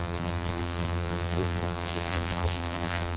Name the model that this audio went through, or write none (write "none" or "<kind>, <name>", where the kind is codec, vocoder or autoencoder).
vocoder, BigVGAN v2